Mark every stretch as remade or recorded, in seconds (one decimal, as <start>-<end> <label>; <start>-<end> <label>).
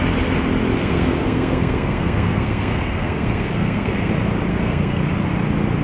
0.0-0.8 recorded; 0.8-4.1 remade; 4.1-4.5 recorded; 4.5-5.0 remade; 5.0-5.8 recorded